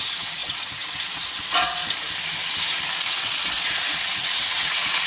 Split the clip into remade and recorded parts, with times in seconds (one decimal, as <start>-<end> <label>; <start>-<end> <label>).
0.0-1.8 remade; 1.8-3.0 recorded; 3.0-5.1 remade